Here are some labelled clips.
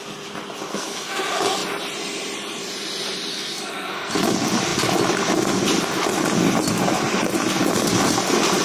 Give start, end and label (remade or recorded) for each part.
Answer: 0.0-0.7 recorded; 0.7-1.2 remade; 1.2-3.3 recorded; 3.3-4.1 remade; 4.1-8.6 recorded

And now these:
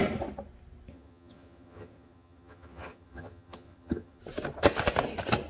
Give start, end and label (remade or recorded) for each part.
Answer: 0.0-0.9 recorded; 0.9-4.2 remade; 4.2-5.5 recorded